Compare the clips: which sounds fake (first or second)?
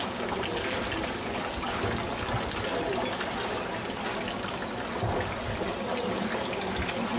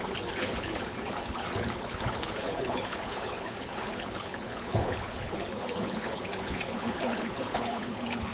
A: second